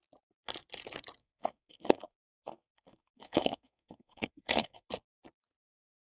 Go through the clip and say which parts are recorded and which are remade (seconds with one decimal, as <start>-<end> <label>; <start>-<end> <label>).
0.0-1.2 recorded; 1.2-4.9 remade; 4.9-6.1 recorded